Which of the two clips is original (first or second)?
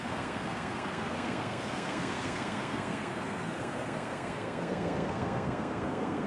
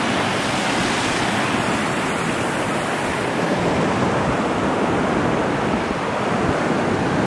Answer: second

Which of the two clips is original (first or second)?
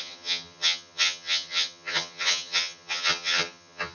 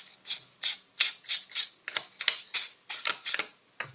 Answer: second